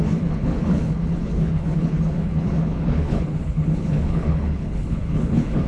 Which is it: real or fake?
fake